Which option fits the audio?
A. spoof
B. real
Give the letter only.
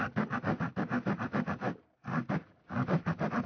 B